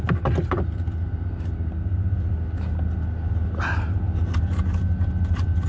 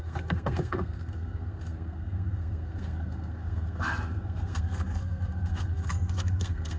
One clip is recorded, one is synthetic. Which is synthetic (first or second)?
second